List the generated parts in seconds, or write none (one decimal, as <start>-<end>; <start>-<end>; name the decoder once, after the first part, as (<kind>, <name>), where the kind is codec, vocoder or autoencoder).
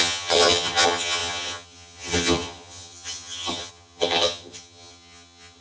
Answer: 0.0-5.6 (vocoder, HiFi-GAN)